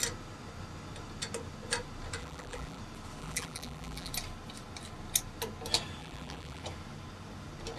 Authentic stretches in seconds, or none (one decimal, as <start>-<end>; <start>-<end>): 0.0-2.2; 2.8-3.2; 4.1-6.0; 6.6-7.8